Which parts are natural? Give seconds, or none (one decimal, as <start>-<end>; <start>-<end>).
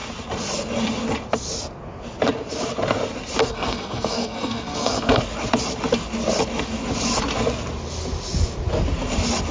0.0-3.4; 5.2-9.5